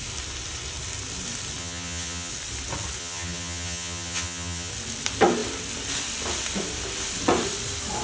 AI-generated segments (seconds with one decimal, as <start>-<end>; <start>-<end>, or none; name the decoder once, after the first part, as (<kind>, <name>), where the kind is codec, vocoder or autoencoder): 1.6-2.3 (vocoder, HiFi-GAN); 3.0-4.7